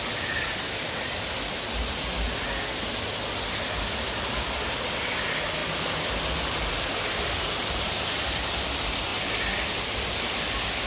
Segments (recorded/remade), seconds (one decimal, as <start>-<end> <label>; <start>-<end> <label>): 0.0-10.9 recorded